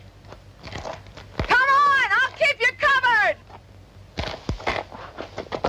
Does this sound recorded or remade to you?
recorded